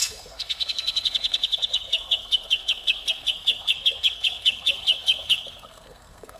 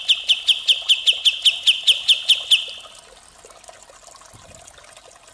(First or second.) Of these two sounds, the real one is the second